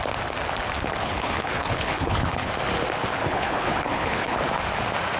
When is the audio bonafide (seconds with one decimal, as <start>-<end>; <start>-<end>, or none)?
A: 0.0-1.0; 2.5-3.2; 4.4-5.2